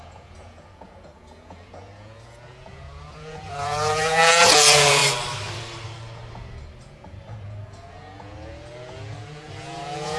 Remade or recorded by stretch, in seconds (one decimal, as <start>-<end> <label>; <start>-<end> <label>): 0.0-5.0 remade; 5.0-6.3 recorded; 6.3-10.2 remade